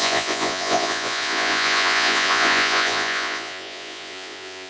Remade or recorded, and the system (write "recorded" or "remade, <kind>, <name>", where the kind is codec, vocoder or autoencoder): remade, vocoder, Vocos